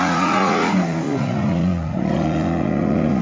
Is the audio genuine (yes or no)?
no